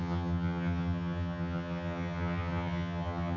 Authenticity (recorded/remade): remade